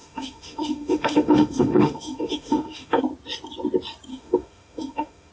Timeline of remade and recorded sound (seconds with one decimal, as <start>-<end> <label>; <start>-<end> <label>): 0.0-3.0 remade; 3.0-4.1 recorded; 4.1-5.3 remade